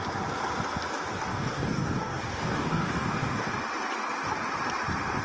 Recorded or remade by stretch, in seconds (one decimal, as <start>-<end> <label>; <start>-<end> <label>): 0.0-1.3 recorded; 1.3-3.5 remade; 3.5-5.2 recorded